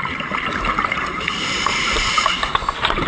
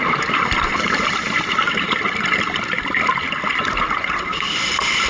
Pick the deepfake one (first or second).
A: first